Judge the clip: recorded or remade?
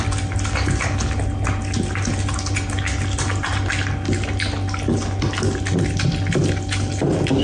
recorded